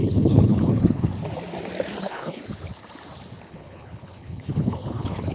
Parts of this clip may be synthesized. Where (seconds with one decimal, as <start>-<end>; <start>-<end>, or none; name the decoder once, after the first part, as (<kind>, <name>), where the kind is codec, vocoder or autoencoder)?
0.0-1.1 (codec, HILCodec); 2.0-2.4; 3.5-5.3